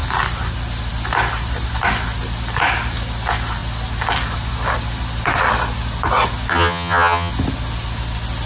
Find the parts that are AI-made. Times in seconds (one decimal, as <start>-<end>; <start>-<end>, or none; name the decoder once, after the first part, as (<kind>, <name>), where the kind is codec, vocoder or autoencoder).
6.5-7.3 (vocoder, HiFi-GAN)